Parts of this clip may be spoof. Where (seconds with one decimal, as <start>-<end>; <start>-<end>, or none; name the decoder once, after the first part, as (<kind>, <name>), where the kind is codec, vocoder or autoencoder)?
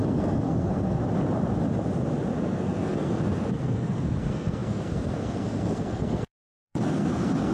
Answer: 0.0-1.0 (codec, SNAC); 2.4-7.5